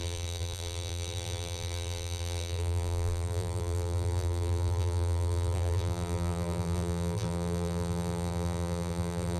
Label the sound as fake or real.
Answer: fake